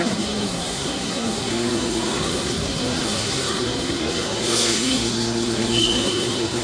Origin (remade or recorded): remade